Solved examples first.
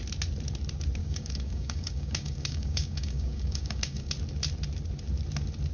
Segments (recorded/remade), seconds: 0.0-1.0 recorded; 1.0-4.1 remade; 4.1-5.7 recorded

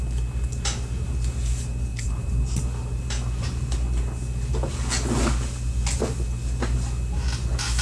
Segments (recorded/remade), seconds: 0.0-1.9 recorded; 1.9-3.0 remade; 3.0-7.8 recorded

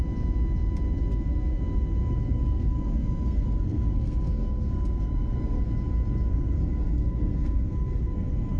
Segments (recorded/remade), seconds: 0.0-1.1 recorded; 1.1-1.6 remade; 1.6-2.0 recorded; 2.0-5.6 remade; 5.6-6.3 recorded; 6.3-8.6 remade

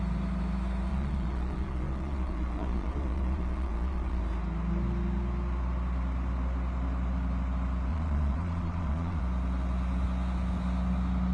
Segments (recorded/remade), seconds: 0.0-0.9 recorded; 0.9-4.2 remade; 4.2-7.9 recorded; 7.9-9.2 remade; 9.2-11.3 recorded

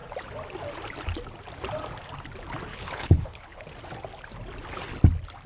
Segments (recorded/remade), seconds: 0.0-2.7 recorded; 2.7-3.7 remade; 3.7-5.5 recorded

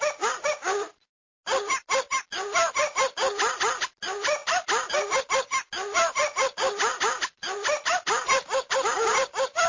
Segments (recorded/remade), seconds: 0.0-9.7 recorded

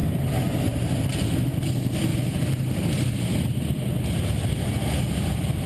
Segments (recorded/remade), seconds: 0.0-1.5 remade; 1.5-2.1 recorded; 2.1-5.7 remade